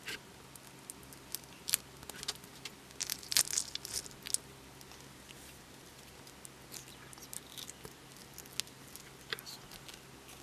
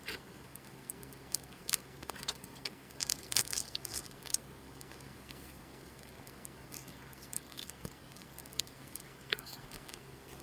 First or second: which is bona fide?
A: first